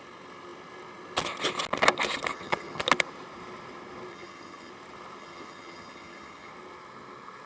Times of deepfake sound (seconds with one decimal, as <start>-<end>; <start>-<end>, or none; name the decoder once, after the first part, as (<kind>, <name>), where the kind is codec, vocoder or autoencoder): 2.3-2.8 (vocoder, HiFi-GAN); 4.1-4.7; 5.2-6.5